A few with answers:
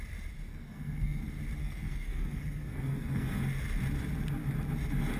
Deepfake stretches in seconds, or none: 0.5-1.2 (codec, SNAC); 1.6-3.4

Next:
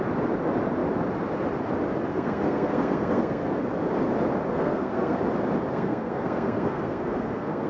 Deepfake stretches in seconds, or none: 2.1-3.5 (codec, SNAC); 4.5-5.2; 5.7-7.7

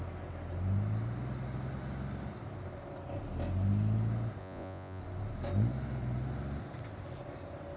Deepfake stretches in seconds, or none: 4.4-5.0 (vocoder, Vocos)

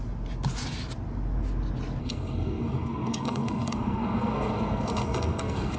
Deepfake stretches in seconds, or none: 2.0-5.8 (codec, SNAC)

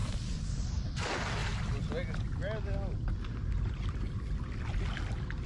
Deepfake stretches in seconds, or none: none

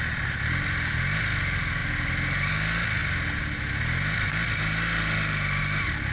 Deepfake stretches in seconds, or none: none

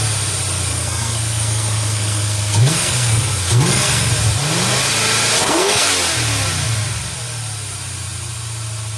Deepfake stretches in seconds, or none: 0.7-4.1 (codec, SNAC); 5.4-5.9

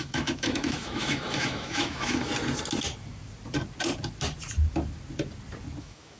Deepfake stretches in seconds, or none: 0.0-2.3 (autoencoder, DAC-VAE); 5.8-6.2